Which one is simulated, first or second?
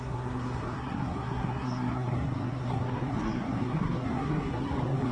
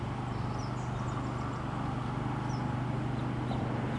first